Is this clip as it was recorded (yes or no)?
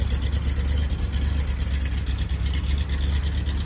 yes